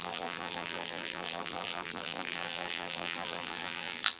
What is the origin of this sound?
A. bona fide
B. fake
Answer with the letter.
B